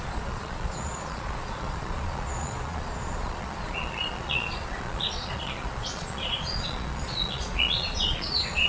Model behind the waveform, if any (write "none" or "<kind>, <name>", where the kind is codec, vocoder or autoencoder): vocoder, Vocos